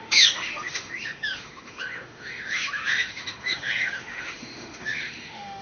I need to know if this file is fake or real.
fake